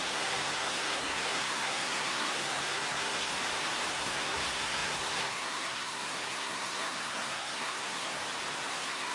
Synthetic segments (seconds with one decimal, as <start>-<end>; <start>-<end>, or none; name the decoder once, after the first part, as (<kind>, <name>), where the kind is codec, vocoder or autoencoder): 0.0-3.3 (codec, SNAC); 3.9-8.2; 8.7-9.1